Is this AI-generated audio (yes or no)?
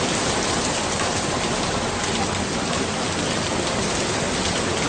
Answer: no